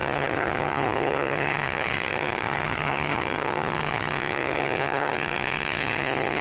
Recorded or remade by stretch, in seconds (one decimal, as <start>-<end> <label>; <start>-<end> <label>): 0.0-6.4 remade